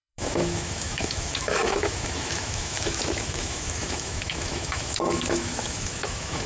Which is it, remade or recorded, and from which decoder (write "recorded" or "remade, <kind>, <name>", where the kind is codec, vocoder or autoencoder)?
remade, autoencoder, DAC-VAE